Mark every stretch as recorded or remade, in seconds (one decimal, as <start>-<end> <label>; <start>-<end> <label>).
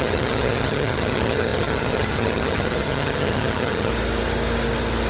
0.0-3.9 remade; 3.9-5.1 recorded